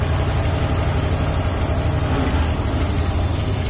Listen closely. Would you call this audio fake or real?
real